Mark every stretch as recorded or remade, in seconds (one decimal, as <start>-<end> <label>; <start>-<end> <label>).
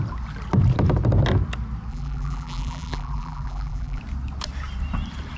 0.0-1.9 recorded; 1.9-4.0 remade; 4.0-5.4 recorded